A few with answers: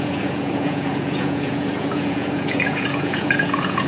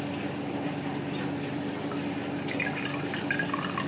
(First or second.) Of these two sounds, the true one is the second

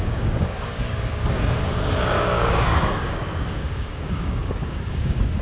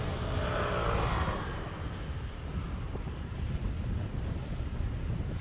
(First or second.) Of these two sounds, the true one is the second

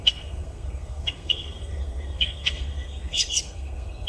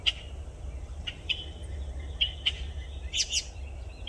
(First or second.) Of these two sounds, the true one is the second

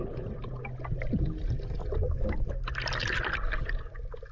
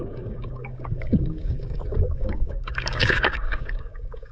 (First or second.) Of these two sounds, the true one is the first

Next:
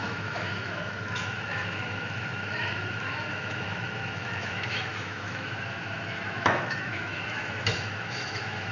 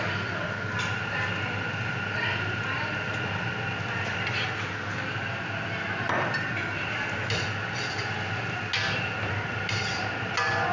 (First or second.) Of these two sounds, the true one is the second